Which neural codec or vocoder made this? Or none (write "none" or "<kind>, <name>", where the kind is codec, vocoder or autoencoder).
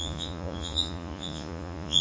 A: vocoder, Vocos